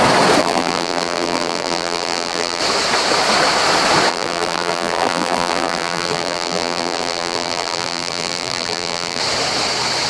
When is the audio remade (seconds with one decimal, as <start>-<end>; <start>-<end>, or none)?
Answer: 0.4-2.6; 4.1-9.2